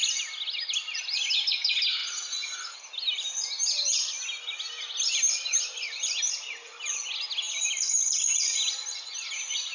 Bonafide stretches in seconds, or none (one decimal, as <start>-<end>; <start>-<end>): 0.0-9.7